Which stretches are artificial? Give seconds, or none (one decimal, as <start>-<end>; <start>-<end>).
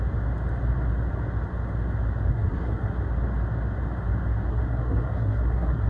2.3-3.0; 4.5-5.9